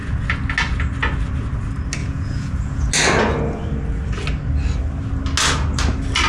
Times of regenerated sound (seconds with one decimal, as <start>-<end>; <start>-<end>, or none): 2.0-2.9